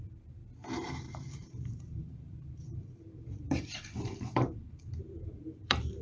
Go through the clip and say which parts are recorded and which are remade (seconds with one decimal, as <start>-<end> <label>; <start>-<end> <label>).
0.0-0.4 remade; 0.4-1.0 recorded; 1.0-6.0 remade